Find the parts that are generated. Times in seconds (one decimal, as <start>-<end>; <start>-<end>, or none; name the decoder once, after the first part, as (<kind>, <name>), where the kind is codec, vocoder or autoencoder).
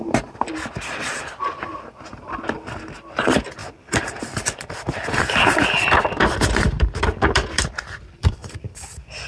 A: 0.0-3.6 (vocoder, BigVGAN v2); 7.7-8.4